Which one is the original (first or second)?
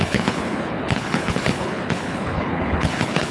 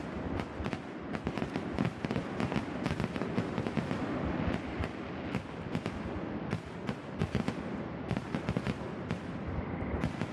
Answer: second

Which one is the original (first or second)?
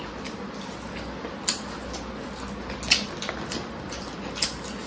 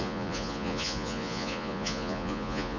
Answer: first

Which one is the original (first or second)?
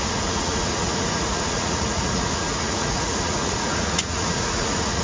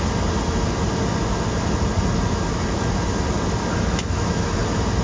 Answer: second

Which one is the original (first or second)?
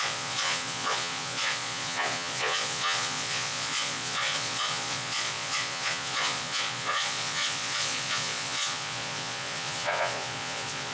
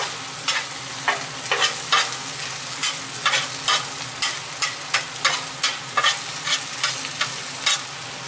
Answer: second